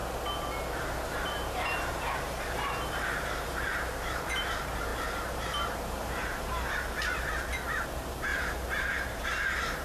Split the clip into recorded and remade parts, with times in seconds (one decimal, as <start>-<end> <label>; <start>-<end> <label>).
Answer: 0.0-0.8 recorded; 0.8-9.8 remade